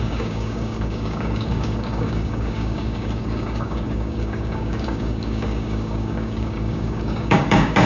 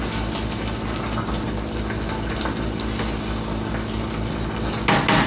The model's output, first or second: first